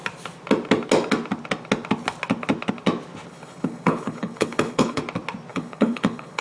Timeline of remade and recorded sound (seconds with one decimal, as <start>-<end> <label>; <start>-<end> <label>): 0.0-3.3 recorded; 3.3-5.0 remade; 5.0-5.5 recorded; 5.5-6.4 remade